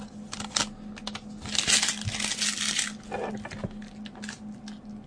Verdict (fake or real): real